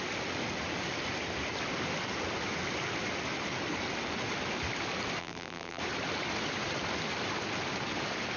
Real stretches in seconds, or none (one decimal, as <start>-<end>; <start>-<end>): 0.0-5.2; 5.8-8.4